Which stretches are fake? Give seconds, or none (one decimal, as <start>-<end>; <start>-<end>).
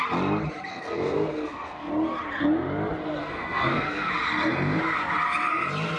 0.7-1.9; 3.2-4.1